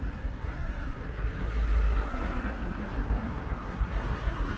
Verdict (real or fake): fake